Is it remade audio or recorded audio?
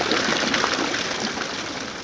recorded